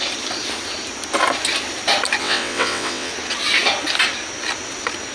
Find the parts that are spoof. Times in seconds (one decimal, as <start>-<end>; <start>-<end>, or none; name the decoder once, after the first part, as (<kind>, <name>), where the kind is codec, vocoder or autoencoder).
2.2-3.1 (vocoder, WaveNeXt)